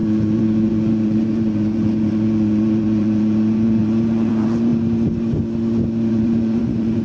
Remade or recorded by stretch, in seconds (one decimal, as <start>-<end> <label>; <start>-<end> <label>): 0.0-4.7 remade; 4.7-6.1 recorded; 6.1-7.0 remade